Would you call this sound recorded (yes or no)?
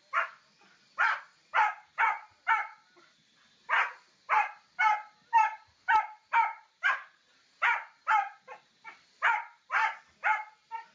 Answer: yes